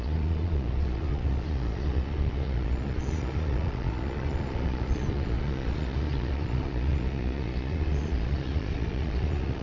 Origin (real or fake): fake